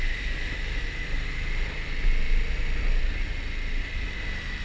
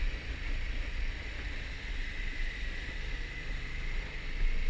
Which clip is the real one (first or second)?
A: first